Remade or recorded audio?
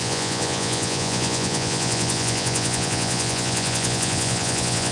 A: remade